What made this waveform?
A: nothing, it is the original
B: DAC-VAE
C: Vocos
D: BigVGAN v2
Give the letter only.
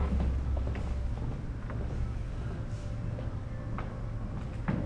A